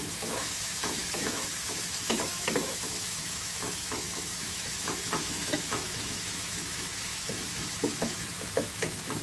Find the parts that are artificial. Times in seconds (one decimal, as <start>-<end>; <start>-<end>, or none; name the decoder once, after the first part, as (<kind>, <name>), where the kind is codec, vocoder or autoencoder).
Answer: 0.0-9.2 (autoencoder, DAC-VAE)